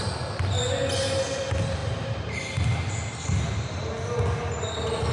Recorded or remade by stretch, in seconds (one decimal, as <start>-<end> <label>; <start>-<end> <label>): 0.0-5.1 recorded